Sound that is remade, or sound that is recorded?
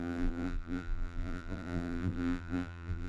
remade